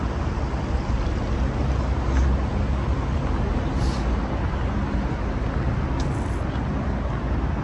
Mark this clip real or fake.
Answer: real